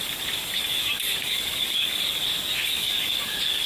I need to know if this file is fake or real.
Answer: fake